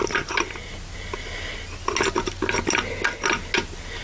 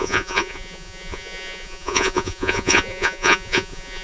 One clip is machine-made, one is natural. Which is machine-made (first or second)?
second